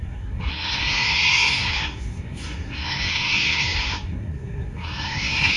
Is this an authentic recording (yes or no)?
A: no